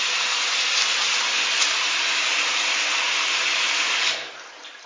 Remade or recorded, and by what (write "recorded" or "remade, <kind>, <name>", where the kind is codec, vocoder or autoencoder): recorded